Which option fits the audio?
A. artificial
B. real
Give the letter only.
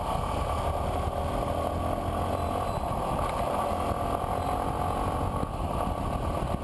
B